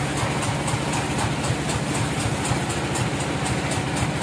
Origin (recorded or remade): recorded